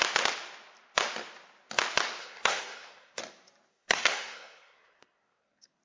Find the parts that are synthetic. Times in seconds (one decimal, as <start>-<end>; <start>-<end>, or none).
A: 2.2-3.2; 3.7-5.8